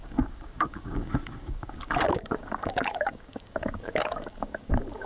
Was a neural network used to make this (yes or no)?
yes